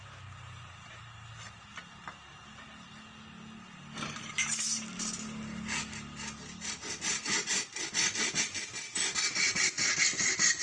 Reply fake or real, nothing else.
real